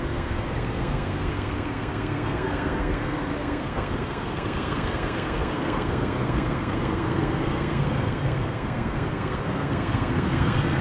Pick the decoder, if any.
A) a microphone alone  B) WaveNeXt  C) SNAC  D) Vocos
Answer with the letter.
C